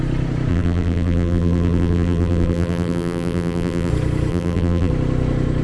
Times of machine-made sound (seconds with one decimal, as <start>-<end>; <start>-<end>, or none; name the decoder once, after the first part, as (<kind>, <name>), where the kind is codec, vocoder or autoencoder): 0.5-3.9 (vocoder, BigVGAN v2); 4.3-4.9